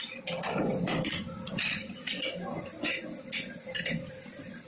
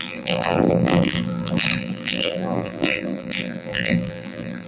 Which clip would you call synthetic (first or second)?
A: second